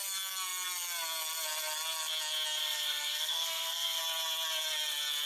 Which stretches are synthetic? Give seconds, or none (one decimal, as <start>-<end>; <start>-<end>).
2.6-4.0